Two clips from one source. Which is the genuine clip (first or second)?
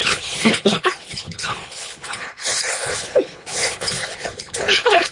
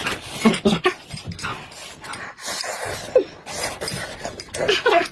second